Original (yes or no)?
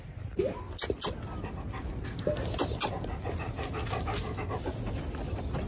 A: yes